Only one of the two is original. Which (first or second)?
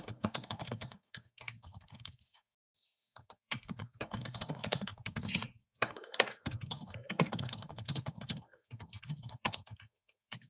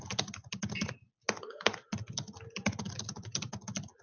second